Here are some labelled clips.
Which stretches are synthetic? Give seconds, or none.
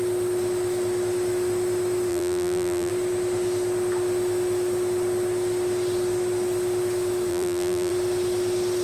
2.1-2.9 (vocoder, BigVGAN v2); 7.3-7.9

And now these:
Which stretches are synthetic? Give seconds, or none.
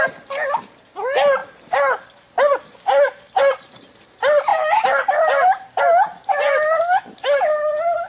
4.5-5.8 (vocoder, BigVGAN v2)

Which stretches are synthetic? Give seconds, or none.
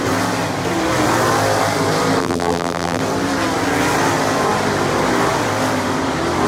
2.2-3.0 (vocoder, BigVGAN v2)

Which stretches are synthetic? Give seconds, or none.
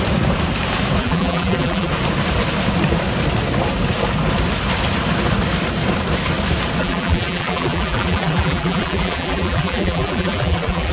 1.0-1.9 (vocoder, BigVGAN v2); 6.8-10.9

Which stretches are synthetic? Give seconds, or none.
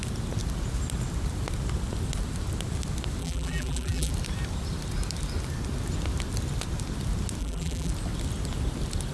3.2-4.1 (vocoder, BigVGAN v2); 7.4-7.9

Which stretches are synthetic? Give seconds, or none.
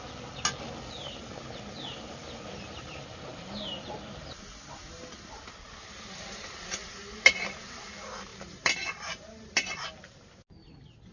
8.3-9.8 (vocoder, BigVGAN v2)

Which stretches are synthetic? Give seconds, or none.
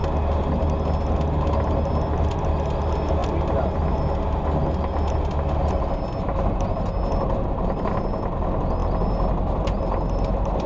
8.8-10.7 (vocoder, BigVGAN v2)